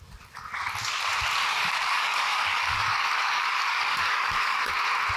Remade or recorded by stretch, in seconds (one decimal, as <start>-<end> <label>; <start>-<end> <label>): 0.0-1.5 recorded; 1.5-4.6 remade; 4.6-5.2 recorded